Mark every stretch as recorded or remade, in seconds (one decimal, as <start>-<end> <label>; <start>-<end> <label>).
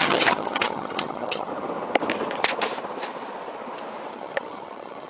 0.0-1.5 remade; 1.5-4.1 recorded; 4.1-5.1 remade